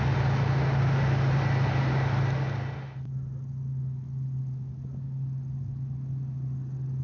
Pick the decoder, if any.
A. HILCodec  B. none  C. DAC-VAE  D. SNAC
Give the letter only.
B